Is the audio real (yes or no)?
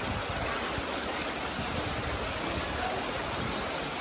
yes